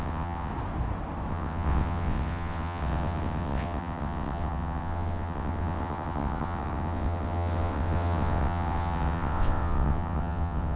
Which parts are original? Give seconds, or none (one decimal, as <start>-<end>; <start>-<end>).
0.5-1.3